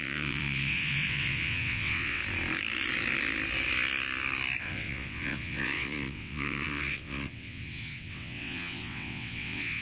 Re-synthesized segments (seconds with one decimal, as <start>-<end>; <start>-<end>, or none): 0.0-2.2; 4.6-9.8